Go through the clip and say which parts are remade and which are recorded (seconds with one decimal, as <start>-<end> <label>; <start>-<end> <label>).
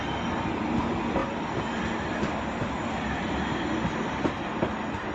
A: 0.0-5.1 recorded